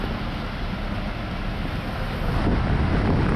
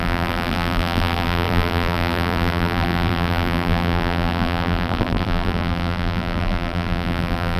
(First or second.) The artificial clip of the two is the second